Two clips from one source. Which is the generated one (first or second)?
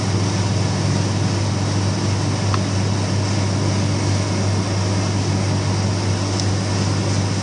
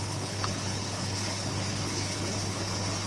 second